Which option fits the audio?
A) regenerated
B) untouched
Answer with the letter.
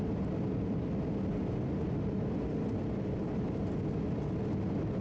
B